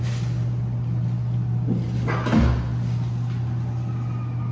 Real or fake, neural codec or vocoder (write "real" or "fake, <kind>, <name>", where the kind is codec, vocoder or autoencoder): real